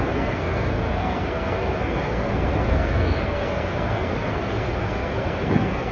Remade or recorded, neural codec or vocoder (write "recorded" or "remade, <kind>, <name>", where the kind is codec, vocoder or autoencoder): remade, codec, SNAC